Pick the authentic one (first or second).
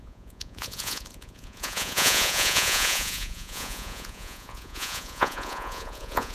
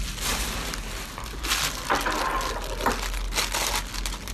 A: second